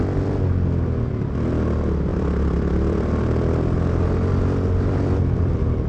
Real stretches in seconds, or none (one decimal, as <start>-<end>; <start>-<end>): 0.0-2.1